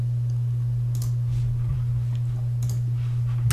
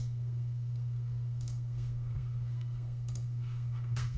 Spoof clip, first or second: second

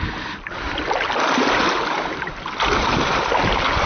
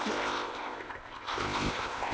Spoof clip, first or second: second